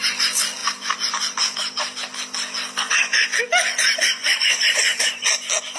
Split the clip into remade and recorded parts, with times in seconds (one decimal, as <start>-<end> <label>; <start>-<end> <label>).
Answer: 0.0-4.2 recorded; 4.2-5.3 remade; 5.3-5.8 recorded